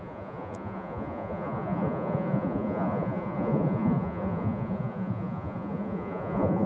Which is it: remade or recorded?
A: remade